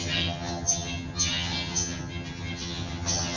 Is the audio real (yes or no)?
no